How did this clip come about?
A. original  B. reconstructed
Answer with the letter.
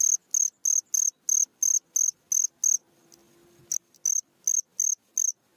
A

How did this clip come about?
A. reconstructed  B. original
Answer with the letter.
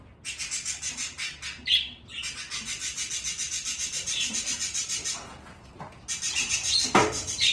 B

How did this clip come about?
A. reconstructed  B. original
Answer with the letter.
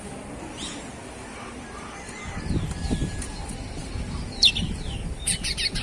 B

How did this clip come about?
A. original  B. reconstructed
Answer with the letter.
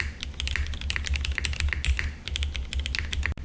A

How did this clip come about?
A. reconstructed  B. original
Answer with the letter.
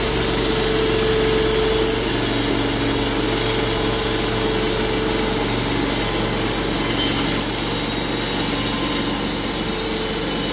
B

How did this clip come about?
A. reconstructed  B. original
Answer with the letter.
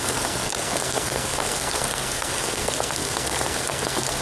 A